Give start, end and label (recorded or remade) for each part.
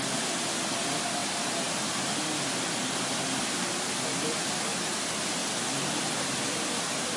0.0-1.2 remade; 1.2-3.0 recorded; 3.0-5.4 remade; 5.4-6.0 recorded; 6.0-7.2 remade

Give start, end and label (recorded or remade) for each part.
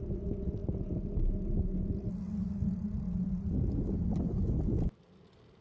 0.0-5.6 recorded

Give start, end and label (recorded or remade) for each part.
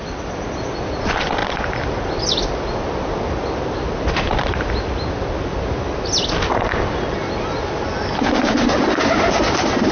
0.0-1.4 recorded; 1.4-4.1 remade; 4.1-9.9 recorded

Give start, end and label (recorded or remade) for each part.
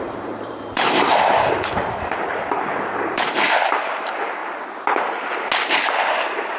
0.0-4.4 remade; 4.4-6.6 recorded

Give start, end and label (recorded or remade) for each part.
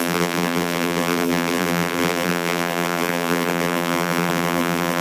0.0-5.0 remade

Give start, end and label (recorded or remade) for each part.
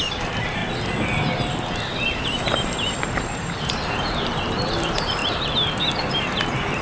0.0-0.6 remade; 0.6-3.0 recorded; 3.0-5.2 remade; 5.2-6.8 recorded